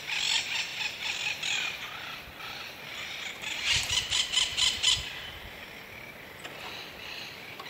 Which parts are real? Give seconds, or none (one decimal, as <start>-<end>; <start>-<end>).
0.0-7.7